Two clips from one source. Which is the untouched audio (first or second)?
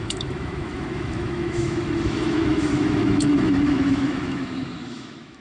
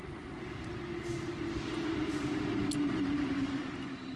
second